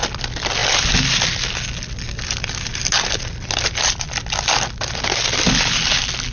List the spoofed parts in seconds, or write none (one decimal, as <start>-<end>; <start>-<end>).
none